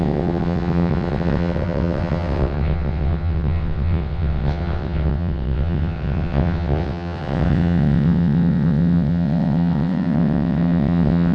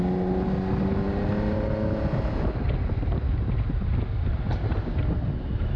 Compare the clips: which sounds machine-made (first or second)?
first